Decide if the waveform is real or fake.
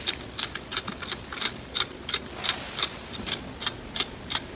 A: real